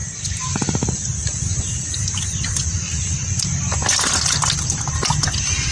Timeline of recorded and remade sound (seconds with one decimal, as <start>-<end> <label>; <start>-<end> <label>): 0.0-5.7 recorded